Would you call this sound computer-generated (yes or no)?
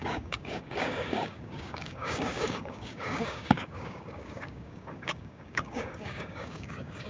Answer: yes